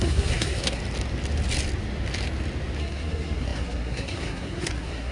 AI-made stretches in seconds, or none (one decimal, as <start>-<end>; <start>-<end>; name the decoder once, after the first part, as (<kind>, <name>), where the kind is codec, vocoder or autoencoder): 0.0-0.8 (codec, SNAC); 2.8-5.1